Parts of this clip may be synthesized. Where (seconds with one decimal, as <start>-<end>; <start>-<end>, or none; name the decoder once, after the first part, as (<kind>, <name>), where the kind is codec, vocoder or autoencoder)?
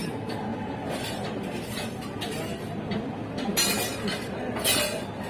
none